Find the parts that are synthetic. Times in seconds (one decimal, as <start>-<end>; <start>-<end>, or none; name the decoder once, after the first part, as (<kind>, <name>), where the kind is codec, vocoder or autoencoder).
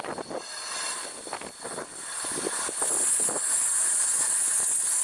none